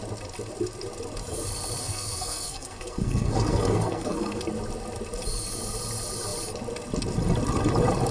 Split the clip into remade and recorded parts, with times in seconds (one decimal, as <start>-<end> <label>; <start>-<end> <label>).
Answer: 0.0-1.8 recorded; 1.8-4.4 remade; 4.4-8.1 recorded